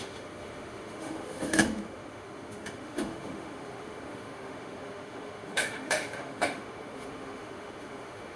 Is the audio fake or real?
fake